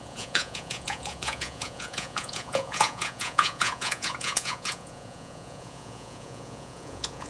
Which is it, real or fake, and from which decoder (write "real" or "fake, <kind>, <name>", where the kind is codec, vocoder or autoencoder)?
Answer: fake, vocoder, Vocos